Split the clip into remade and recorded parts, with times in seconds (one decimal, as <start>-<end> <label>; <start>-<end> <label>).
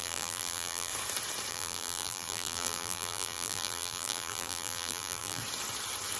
0.0-0.9 remade; 0.9-1.5 recorded; 1.5-5.4 remade; 5.4-6.2 recorded